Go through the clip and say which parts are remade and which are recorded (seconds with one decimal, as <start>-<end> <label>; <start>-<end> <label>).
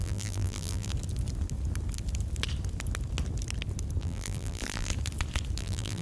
0.0-0.9 remade; 0.9-4.0 recorded; 4.0-4.9 remade; 4.9-5.6 recorded; 5.6-6.0 remade